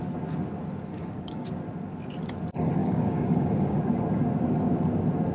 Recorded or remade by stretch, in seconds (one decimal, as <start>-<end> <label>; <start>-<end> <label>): 0.0-0.9 recorded; 0.9-1.5 remade; 1.5-2.8 recorded; 2.8-3.8 remade; 3.8-5.3 recorded